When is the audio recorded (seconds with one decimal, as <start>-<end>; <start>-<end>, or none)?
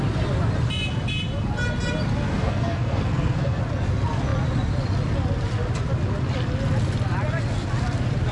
0.0-2.3; 3.6-8.3